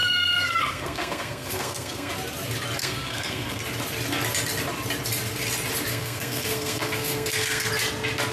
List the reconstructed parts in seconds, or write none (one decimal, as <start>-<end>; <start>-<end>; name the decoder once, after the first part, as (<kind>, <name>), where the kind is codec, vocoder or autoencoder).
0.0-2.1 (codec, SNAC); 2.8-3.6; 5.9-7.7